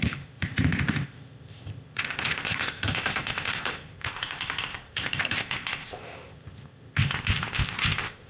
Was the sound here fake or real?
fake